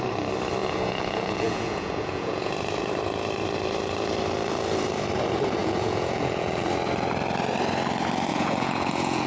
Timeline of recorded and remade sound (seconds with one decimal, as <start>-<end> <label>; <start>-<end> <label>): 0.0-0.6 recorded; 0.6-2.5 remade; 2.5-5.6 recorded; 5.6-6.6 remade; 6.6-8.3 recorded; 8.3-9.3 remade